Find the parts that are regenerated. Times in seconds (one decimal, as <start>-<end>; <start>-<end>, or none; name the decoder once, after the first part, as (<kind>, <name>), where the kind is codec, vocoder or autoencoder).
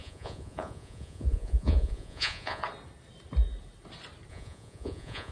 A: 0.0-2.6 (vocoder, Vocos); 4.3-5.3